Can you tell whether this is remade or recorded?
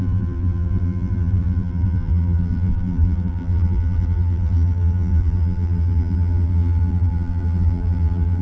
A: remade